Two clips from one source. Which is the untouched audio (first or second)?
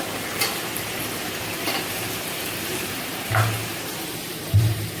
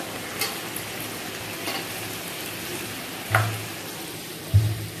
second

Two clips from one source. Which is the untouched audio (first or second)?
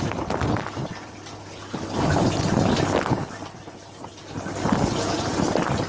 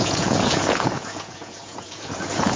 first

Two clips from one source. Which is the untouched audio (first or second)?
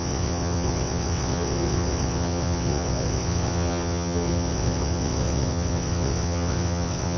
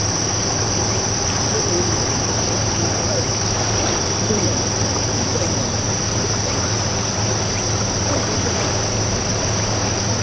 second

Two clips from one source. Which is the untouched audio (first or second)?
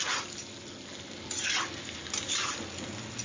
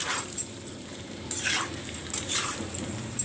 first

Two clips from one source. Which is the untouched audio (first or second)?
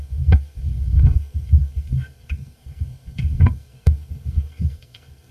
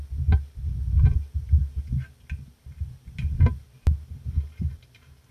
second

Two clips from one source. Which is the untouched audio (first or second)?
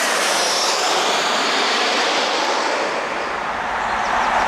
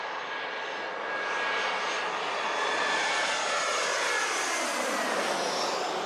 second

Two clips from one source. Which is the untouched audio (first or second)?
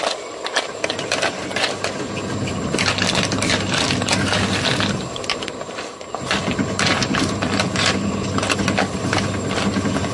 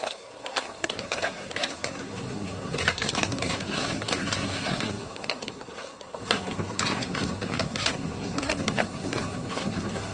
first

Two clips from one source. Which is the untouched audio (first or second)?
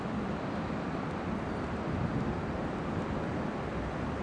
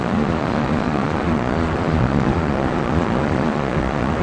first